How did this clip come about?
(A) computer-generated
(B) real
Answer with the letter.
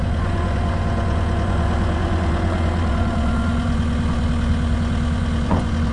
A